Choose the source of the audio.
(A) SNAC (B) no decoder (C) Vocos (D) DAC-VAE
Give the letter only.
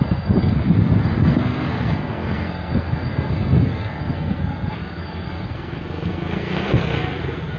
A